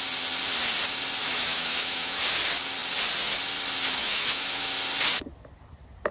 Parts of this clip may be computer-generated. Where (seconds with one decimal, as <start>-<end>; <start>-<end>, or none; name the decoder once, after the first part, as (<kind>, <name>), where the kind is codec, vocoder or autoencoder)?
1.2-2.2 (autoencoder, DAC-VAE); 4.0-4.7